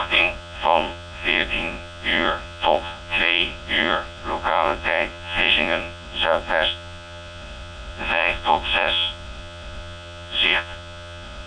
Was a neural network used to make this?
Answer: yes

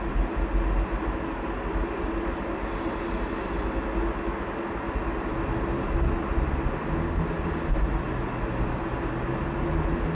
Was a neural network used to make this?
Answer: no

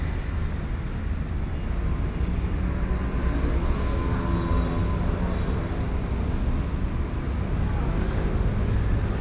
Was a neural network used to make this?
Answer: no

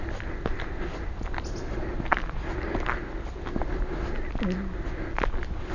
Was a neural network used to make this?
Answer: no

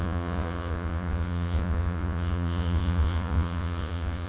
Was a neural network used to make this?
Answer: yes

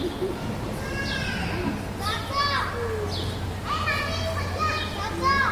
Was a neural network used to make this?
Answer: no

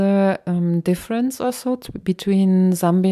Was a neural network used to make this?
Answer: no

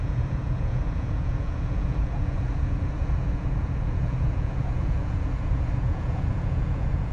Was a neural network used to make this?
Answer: yes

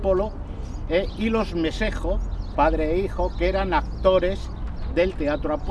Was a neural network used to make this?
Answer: no